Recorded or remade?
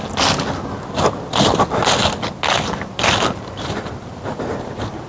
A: recorded